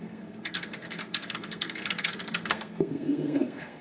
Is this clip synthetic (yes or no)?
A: yes